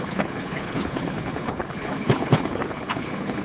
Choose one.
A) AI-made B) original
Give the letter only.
A